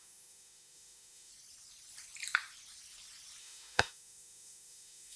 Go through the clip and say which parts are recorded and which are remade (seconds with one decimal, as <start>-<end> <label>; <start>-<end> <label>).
0.0-1.3 remade; 1.3-3.4 recorded; 3.4-5.2 remade